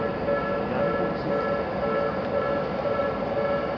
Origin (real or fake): real